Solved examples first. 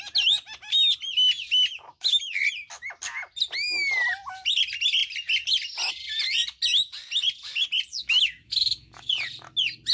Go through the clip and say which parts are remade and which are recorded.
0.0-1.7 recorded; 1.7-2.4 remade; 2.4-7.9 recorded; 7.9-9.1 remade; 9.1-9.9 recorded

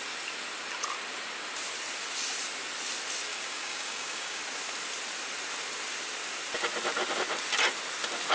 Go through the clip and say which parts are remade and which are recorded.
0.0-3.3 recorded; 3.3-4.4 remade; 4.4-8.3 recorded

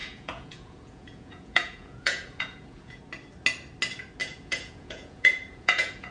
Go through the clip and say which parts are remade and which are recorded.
0.0-3.0 remade; 3.0-4.2 recorded; 4.2-6.1 remade

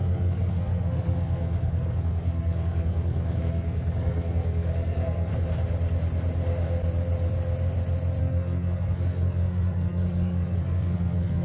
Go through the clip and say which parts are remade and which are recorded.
0.0-5.3 remade; 5.3-8.2 recorded; 8.2-11.4 remade

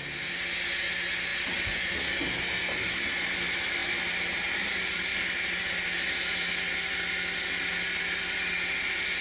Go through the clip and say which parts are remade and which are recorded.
0.0-9.2 recorded

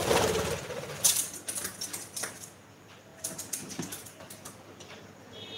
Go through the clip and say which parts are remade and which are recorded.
0.0-5.6 recorded